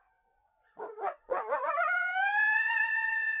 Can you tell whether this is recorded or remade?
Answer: remade